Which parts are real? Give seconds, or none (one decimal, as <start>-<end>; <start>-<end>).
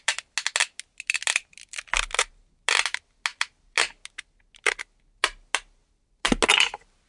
0.0-7.1